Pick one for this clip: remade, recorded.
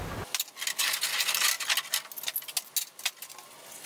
recorded